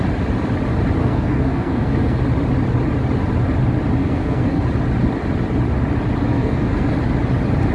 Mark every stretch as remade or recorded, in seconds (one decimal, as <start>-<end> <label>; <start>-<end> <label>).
0.0-1.0 recorded; 1.0-2.2 remade; 2.2-4.0 recorded; 4.0-4.6 remade; 4.6-6.3 recorded; 6.3-6.9 remade; 6.9-7.7 recorded